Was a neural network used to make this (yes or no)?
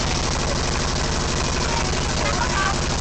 no